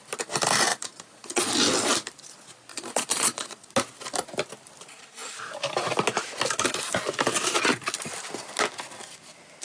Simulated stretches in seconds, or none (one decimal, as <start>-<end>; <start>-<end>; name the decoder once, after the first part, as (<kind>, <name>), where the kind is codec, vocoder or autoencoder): 0.7-1.5 (vocoder, Vocos); 2.7-3.7

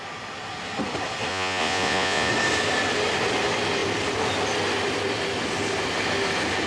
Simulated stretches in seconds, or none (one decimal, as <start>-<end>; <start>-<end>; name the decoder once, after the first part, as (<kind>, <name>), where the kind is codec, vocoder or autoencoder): 1.3-2.3 (vocoder, Vocos)

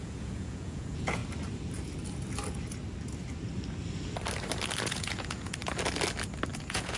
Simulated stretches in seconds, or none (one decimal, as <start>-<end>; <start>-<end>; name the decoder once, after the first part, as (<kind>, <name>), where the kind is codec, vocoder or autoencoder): 0.0-1.2 (vocoder, Vocos); 4.8-5.6; 6.5-7.0